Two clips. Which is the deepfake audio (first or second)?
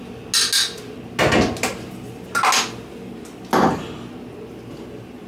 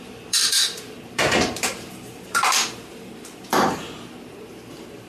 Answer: second